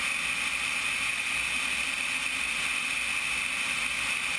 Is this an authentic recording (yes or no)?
yes